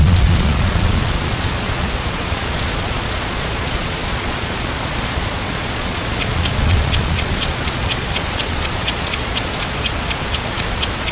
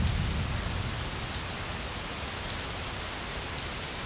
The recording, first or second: second